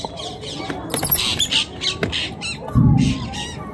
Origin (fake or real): real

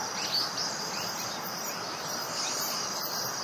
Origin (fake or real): real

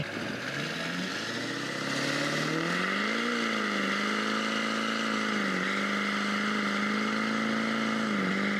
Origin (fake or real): real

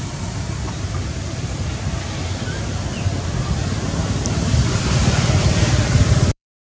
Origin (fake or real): fake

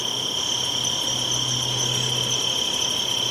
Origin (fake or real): real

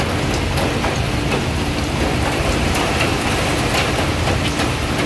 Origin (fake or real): real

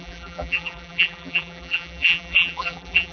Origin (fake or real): fake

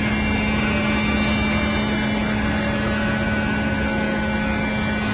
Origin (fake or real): real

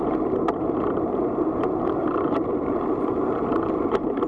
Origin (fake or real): fake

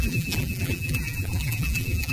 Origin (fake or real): fake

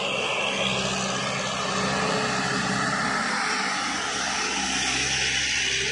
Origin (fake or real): real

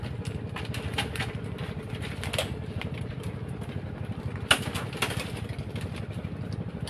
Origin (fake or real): real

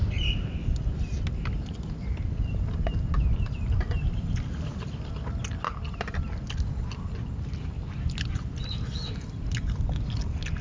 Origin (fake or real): real